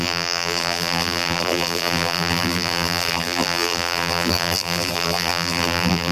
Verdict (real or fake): fake